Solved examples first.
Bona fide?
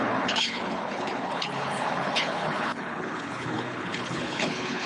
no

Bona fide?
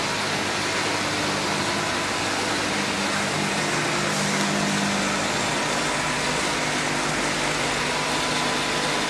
yes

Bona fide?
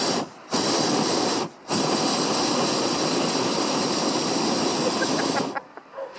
yes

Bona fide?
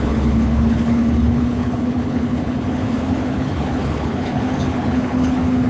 no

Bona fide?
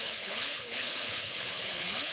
no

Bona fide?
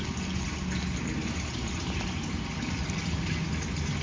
yes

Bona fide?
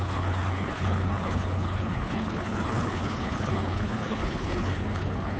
no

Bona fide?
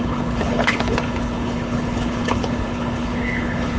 no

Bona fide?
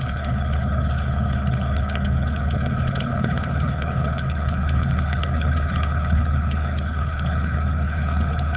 no